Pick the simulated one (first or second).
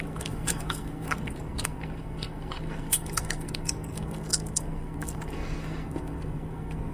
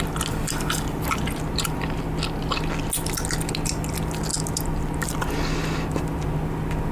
first